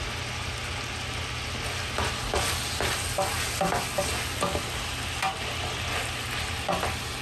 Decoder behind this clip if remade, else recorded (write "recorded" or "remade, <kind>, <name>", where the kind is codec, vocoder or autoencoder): recorded